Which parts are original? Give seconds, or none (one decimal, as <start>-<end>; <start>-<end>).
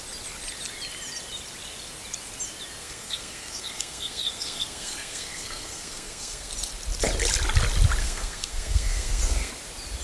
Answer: 0.0-2.8; 6.5-8.0; 9.5-10.0